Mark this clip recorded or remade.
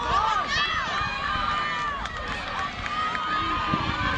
recorded